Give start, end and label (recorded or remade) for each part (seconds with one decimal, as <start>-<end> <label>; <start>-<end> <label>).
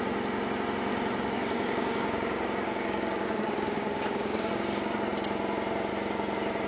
0.0-0.9 recorded; 0.9-4.5 remade; 4.5-6.7 recorded